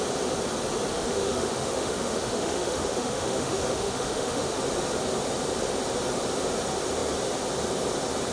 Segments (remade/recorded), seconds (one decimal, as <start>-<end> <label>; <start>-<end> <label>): 0.0-0.9 recorded; 0.9-4.6 remade; 4.6-8.3 recorded